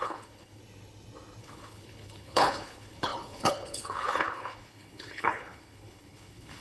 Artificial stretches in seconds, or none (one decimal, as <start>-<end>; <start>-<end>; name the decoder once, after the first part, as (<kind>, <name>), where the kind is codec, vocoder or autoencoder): 0.0-0.6 (codec, HILCodec); 1.4-6.6